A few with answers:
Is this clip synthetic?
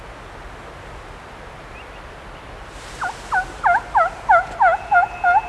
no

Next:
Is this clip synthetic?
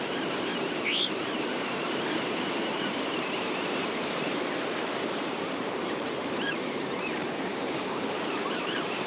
yes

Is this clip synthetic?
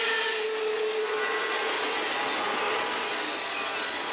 no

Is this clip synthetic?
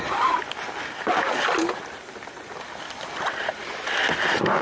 no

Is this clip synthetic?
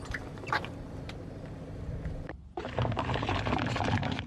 yes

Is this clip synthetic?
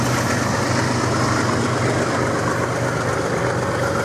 no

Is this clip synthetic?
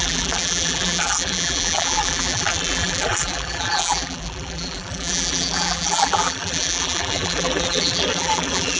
yes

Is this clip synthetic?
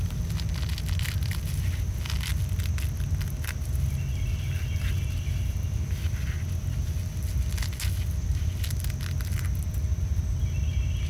no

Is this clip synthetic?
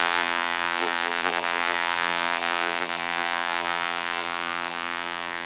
yes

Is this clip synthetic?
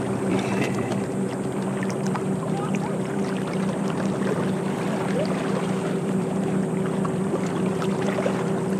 yes